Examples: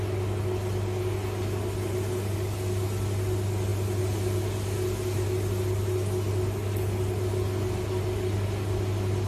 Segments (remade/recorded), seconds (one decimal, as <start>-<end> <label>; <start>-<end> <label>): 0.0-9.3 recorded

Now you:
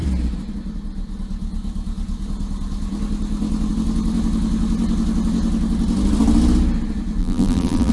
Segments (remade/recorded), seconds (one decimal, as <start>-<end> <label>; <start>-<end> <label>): 0.0-7.2 recorded; 7.2-7.9 remade

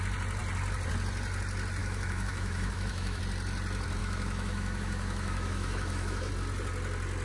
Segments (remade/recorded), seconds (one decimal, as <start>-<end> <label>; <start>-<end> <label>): 0.0-1.8 recorded; 1.8-3.2 remade; 3.2-4.0 recorded; 4.0-6.3 remade; 6.3-7.2 recorded

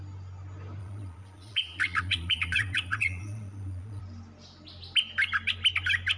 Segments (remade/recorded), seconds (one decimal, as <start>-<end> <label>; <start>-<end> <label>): 0.0-0.8 recorded; 0.8-4.0 remade; 4.0-6.2 recorded

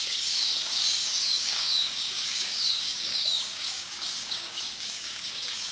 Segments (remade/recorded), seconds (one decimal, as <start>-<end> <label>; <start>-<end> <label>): 0.0-5.7 remade

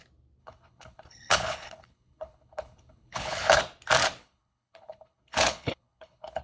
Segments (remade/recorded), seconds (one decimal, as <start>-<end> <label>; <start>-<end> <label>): 0.0-0.4 recorded; 0.4-3.6 remade; 3.6-4.2 recorded; 4.2-6.4 remade

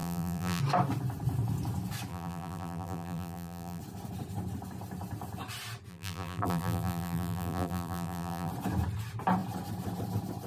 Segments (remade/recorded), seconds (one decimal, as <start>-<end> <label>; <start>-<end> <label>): 0.0-0.6 remade; 0.6-2.1 recorded; 2.1-3.8 remade; 3.8-5.9 recorded; 5.9-8.5 remade; 8.5-10.5 recorded